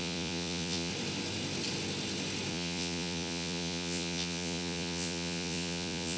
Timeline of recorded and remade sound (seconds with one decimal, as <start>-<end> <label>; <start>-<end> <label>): 0.0-0.9 remade; 0.9-2.5 recorded; 2.5-6.2 remade